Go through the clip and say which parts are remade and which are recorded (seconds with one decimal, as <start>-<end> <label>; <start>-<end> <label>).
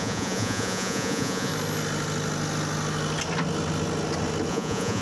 0.0-1.5 remade; 1.5-4.5 recorded; 4.5-5.0 remade